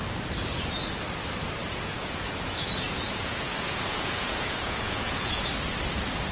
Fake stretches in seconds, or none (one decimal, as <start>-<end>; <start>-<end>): 1.6-5.4